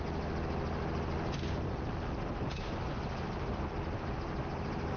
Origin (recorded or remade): recorded